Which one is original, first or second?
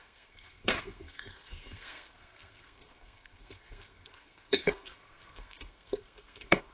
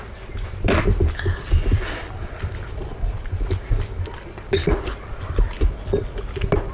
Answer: second